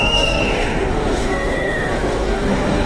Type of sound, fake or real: fake